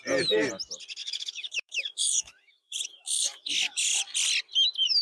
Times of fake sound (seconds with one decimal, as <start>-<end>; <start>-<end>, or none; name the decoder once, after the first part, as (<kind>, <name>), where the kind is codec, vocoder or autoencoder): 1.0-4.0 (autoencoder, DAC-VAE)